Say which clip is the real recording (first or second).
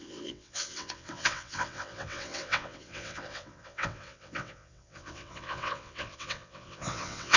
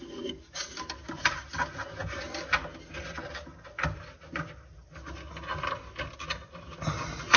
second